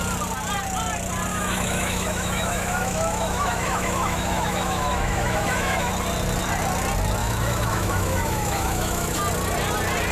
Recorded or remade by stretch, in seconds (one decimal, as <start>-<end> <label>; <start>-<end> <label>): 0.0-1.3 recorded; 1.3-5.9 remade; 5.9-7.2 recorded; 7.2-9.2 remade; 9.2-10.1 recorded